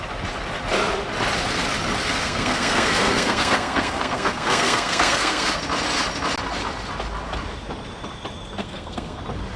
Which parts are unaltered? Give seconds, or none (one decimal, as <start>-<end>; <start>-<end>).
0.0-2.0; 5.6-8.6; 9.2-9.6